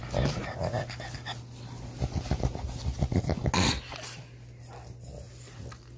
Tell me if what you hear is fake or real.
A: real